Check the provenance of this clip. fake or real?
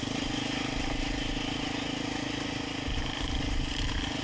real